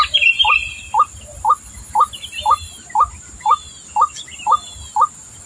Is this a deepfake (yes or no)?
no